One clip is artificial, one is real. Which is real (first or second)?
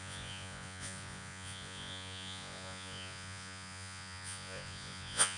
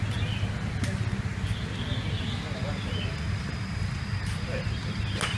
second